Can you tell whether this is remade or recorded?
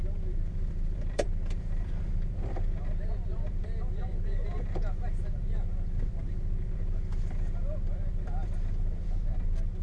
remade